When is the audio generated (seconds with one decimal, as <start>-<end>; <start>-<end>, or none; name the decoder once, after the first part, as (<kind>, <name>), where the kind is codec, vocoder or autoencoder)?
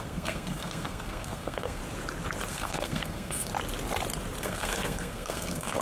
0.0-1.8 (codec, SNAC); 2.5-3.5; 4.4-5.8